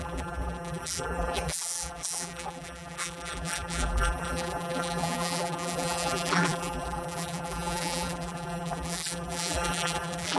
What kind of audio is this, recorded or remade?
remade